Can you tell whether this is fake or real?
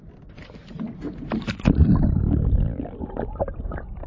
real